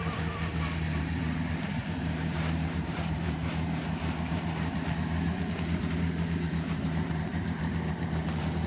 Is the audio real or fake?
fake